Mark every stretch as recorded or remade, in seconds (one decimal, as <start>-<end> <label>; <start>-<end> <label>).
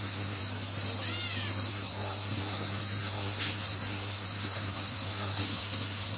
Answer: 0.0-0.4 remade; 0.4-1.7 recorded; 1.7-6.2 remade